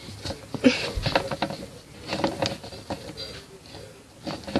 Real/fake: real